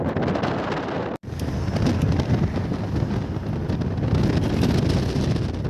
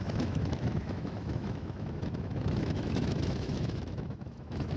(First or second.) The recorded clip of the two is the first